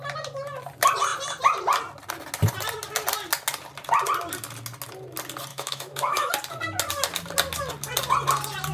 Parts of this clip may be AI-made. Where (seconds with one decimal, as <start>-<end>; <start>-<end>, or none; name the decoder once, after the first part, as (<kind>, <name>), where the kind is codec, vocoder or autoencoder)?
5.5-6.3 (autoencoder, DAC-VAE)